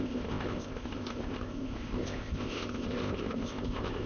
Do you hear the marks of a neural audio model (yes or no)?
yes